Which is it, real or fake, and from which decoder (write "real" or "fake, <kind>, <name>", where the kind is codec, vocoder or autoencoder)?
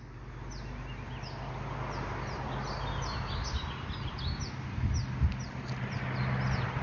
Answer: real